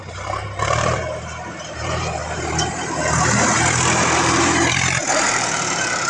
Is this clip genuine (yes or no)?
no